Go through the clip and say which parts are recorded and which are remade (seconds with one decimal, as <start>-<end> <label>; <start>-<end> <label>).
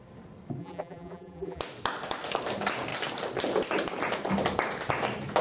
0.0-0.6 recorded; 0.6-1.6 remade; 1.6-5.4 recorded